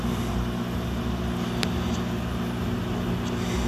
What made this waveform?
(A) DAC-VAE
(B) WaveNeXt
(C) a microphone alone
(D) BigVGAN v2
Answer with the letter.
C